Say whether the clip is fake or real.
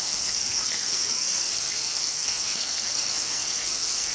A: fake